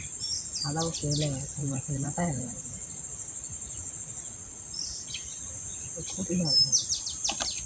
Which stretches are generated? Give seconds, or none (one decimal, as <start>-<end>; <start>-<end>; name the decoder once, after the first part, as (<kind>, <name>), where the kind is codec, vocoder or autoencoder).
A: 1.6-3.0 (vocoder, Vocos); 3.5-4.1; 4.5-5.4

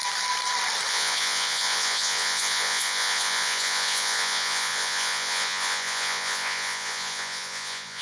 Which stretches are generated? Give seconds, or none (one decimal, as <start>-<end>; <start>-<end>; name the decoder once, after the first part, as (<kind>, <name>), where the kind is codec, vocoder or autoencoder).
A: 0.9-8.0 (vocoder, Vocos)

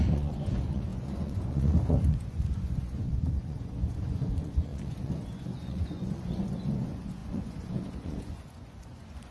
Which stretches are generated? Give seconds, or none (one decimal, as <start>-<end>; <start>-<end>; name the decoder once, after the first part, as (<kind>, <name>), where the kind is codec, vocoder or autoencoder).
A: 0.0-9.3 (vocoder, Vocos)